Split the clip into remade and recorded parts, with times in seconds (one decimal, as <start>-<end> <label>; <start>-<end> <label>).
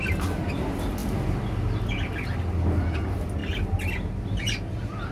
0.0-5.1 recorded